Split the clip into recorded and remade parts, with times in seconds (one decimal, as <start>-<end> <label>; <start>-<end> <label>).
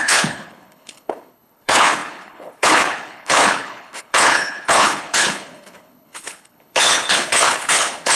0.0-8.2 remade